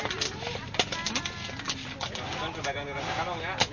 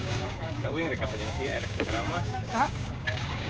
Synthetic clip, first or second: second